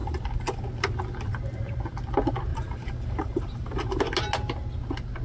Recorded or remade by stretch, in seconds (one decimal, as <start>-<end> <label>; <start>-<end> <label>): 0.0-0.6 remade; 0.6-2.5 recorded; 2.5-4.0 remade; 4.0-5.2 recorded